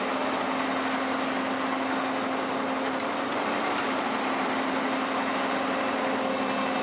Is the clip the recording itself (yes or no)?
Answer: yes